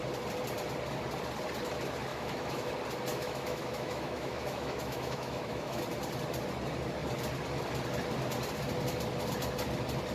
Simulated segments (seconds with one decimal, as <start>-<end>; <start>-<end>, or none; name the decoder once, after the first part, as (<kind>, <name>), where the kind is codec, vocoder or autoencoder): 2.1-2.7 (autoencoder, DAC-VAE); 3.1-5.8